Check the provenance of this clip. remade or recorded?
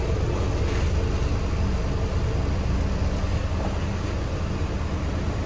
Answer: recorded